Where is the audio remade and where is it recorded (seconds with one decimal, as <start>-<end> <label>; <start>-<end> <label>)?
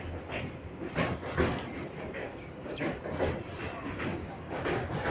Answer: 0.0-2.2 recorded; 2.2-3.0 remade; 3.0-4.2 recorded; 4.2-5.1 remade